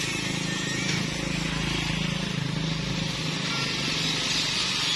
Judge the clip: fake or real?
real